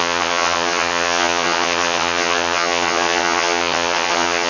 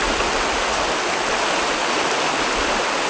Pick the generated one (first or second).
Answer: first